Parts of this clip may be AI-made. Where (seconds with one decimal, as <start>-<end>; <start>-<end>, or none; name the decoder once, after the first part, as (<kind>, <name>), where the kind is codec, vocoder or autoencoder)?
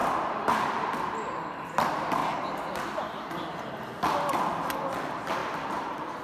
5.4-6.2 (vocoder, BigVGAN v2)